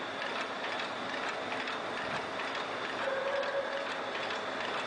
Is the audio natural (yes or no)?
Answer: yes